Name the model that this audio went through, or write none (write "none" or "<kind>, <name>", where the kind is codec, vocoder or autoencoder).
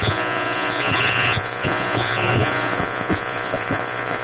vocoder, Vocos